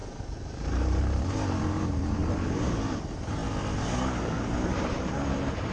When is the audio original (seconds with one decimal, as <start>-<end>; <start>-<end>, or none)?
3.4-4.4